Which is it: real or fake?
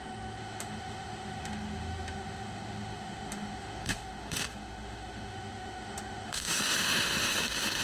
fake